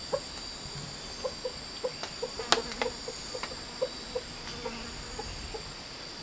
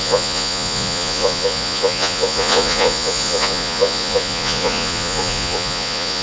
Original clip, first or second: first